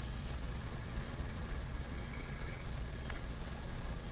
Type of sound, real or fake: fake